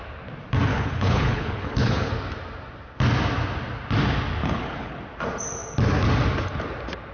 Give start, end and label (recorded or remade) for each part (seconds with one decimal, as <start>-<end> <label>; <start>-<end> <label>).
0.0-0.7 recorded; 0.7-2.1 remade; 2.1-4.4 recorded; 4.4-5.0 remade; 5.0-7.1 recorded